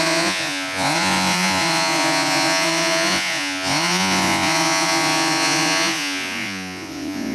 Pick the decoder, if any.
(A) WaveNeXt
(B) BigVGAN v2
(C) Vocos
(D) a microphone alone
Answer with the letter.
C